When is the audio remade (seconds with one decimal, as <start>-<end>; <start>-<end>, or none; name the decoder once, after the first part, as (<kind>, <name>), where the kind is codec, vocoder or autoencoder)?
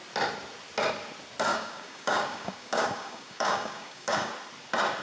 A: 1.5-4.3 (codec, DAC)